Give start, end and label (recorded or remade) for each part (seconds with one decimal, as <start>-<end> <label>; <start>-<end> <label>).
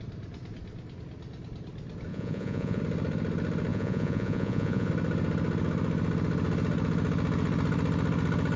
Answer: 0.0-2.1 recorded; 2.1-2.8 remade; 2.8-3.7 recorded; 3.7-4.9 remade; 4.9-8.6 recorded